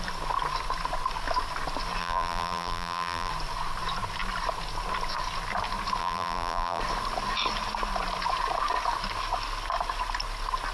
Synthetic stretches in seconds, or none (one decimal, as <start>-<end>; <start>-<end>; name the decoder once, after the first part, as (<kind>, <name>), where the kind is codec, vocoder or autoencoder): 2.0-3.3 (vocoder, BigVGAN v2); 6.0-6.8